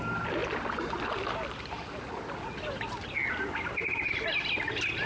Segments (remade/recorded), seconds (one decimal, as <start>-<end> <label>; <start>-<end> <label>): 0.0-5.1 recorded